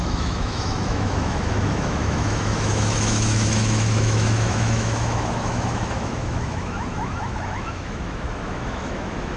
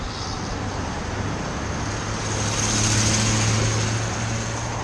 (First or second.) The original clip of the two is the second